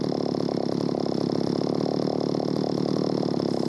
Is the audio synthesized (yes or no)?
no